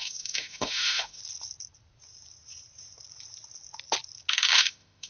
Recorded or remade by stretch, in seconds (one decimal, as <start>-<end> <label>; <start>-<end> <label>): 0.0-1.2 remade; 1.2-4.3 recorded; 4.3-5.1 remade